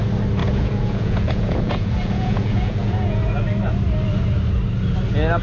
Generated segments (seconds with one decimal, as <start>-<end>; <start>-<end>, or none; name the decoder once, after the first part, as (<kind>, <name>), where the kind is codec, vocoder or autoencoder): 0.4-3.2 (vocoder, Vocos)